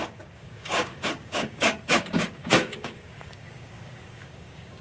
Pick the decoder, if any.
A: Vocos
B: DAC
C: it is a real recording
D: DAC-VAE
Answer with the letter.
B